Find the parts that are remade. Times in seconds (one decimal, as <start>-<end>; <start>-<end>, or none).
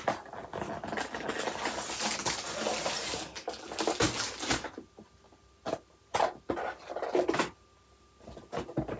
none